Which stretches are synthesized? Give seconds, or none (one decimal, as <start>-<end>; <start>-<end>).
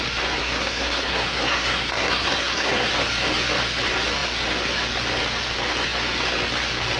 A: 0.4-2.9